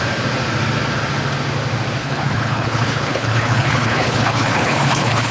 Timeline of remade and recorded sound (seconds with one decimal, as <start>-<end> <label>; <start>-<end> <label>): 0.0-2.0 recorded; 2.0-5.3 remade